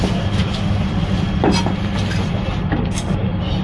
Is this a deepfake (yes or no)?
no